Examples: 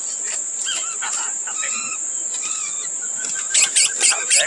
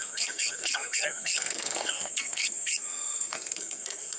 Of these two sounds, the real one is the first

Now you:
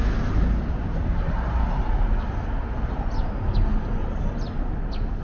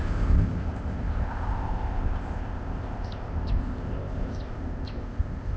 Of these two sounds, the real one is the first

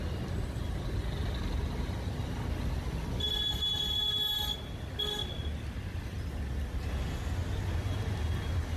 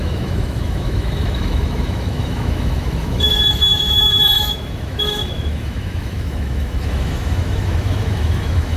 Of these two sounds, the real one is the first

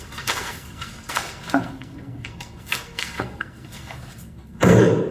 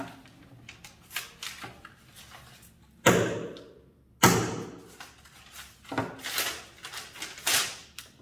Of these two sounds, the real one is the second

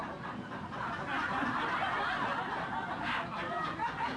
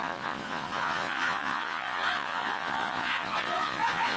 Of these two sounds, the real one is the first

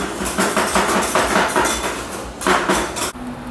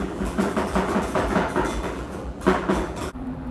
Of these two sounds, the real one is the first